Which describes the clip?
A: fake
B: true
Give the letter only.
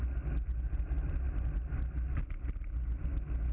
B